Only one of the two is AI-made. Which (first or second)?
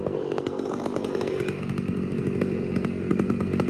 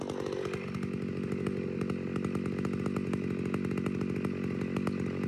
first